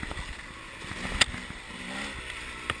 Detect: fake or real real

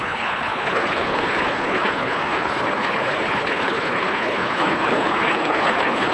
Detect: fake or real fake